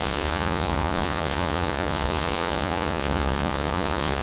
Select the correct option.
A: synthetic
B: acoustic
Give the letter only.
A